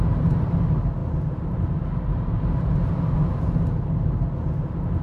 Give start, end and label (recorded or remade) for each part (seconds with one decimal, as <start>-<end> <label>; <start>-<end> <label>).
0.0-1.0 recorded; 1.0-1.7 remade; 1.7-5.0 recorded